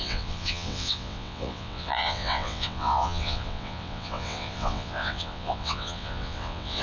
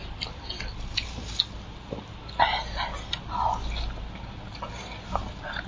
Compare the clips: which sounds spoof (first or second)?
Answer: first